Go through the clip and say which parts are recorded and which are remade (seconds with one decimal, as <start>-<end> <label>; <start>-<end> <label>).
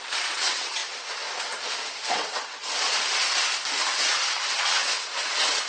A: 0.0-0.8 remade; 0.8-2.1 recorded; 2.1-2.6 remade; 2.6-4.5 recorded; 4.5-5.7 remade